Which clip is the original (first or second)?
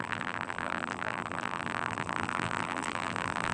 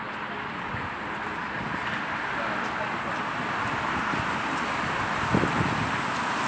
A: second